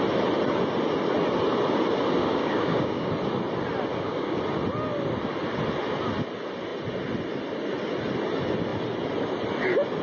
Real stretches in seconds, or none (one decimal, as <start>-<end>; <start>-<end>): 0.0-2.2; 3.1-3.9; 4.4-10.0